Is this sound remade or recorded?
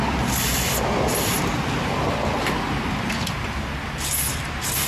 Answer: recorded